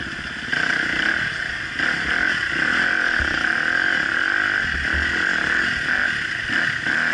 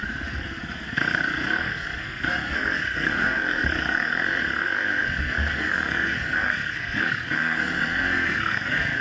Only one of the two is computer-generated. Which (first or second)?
second